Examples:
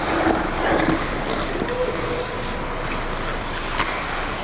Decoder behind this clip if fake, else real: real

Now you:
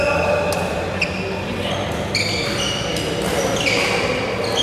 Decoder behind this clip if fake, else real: real